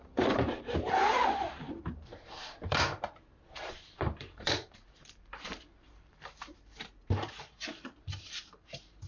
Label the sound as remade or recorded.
remade